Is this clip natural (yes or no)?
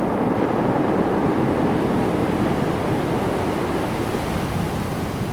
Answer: yes